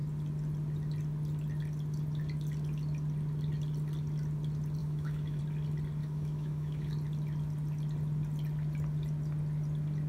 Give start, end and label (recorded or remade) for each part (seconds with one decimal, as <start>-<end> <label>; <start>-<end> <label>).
0.0-4.8 recorded; 4.8-5.4 remade; 5.4-6.0 recorded; 6.0-6.9 remade; 6.9-10.1 recorded